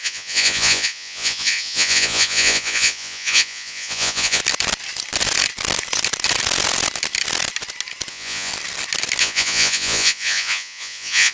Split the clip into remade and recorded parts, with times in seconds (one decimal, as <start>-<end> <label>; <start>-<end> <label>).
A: 0.0-4.4 remade; 4.4-8.1 recorded; 8.1-8.5 remade; 8.5-9.2 recorded; 9.2-11.3 remade